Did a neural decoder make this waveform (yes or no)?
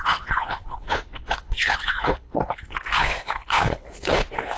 yes